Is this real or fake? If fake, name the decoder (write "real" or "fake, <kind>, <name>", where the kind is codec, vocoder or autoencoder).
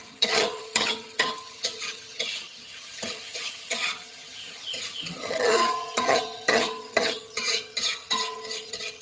fake, vocoder, HiFi-GAN